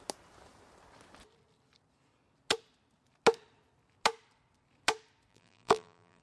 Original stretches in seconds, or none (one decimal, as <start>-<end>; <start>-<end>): 0.0-5.3